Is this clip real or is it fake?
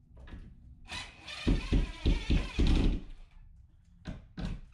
real